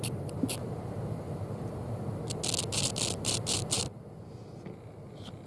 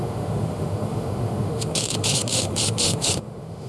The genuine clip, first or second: first